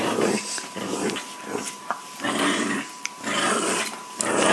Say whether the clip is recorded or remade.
remade